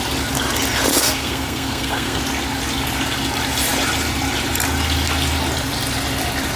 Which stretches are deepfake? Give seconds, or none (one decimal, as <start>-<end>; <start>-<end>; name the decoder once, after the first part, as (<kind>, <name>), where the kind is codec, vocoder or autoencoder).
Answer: 0.9-2.2 (codec, SNAC)